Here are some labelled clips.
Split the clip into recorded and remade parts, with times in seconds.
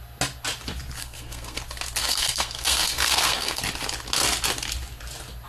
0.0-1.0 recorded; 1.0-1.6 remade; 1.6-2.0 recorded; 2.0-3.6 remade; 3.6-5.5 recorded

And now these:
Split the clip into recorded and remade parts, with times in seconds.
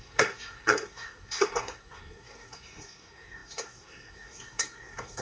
0.0-5.2 remade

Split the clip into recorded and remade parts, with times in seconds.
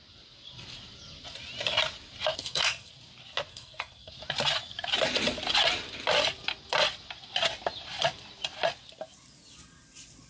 0.0-2.4 recorded; 2.4-2.9 remade; 2.9-3.5 recorded; 3.5-4.1 remade; 4.1-10.3 recorded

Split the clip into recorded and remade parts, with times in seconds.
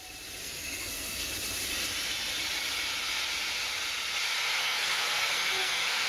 0.0-0.4 recorded; 0.4-1.3 remade; 1.3-4.6 recorded; 4.6-6.1 remade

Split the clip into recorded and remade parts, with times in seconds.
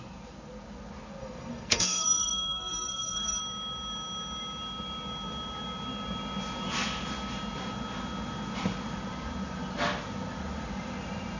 0.0-1.2 recorded; 1.2-3.4 remade; 3.4-11.4 recorded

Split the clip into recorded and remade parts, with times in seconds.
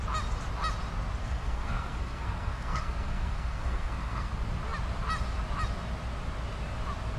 0.0-1.2 recorded; 1.2-4.3 remade; 4.3-7.2 recorded